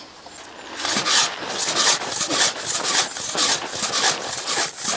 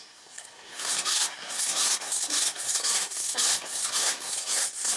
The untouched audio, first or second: first